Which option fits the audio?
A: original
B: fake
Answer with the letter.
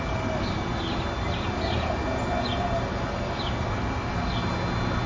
A